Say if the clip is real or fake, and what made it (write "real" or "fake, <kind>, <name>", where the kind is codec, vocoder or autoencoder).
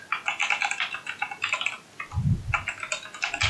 real